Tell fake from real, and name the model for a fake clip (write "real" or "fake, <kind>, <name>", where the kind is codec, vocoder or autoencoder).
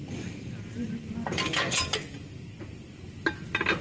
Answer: real